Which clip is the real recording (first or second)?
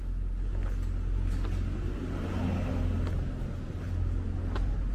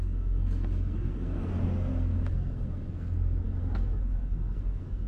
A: first